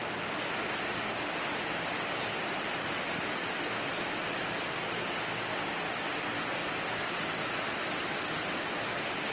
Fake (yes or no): no